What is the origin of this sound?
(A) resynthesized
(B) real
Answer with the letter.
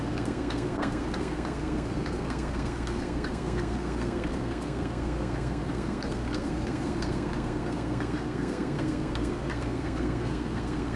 A